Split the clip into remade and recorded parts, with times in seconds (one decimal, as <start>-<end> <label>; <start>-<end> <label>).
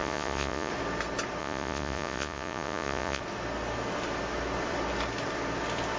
0.0-0.7 remade; 0.7-1.4 recorded; 1.4-3.2 remade; 3.2-6.0 recorded